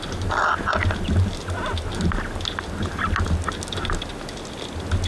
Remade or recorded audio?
recorded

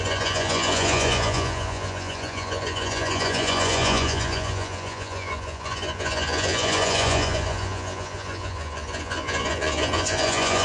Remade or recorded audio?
remade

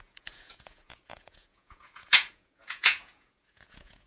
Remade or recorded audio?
remade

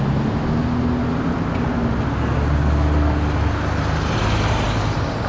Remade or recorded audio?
recorded